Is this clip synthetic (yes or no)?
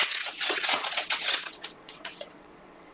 yes